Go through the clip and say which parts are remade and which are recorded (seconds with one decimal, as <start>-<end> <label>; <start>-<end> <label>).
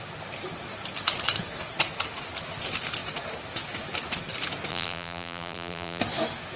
0.0-4.7 recorded; 4.7-6.0 remade; 6.0-6.6 recorded